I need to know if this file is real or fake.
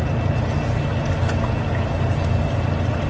real